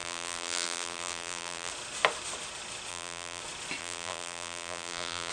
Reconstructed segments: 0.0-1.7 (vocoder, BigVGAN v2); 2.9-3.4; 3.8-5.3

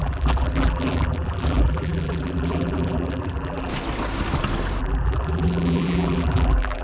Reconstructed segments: 0.0-3.7 (vocoder, BigVGAN v2); 4.8-6.8